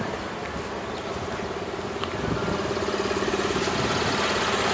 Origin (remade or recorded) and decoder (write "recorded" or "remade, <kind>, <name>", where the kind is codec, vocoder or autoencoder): recorded